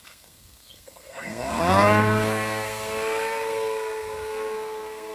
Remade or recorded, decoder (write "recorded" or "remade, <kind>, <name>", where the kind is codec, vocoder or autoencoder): remade, codec, SNAC